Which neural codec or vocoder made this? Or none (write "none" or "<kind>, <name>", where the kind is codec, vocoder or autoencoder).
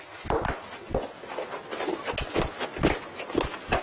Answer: none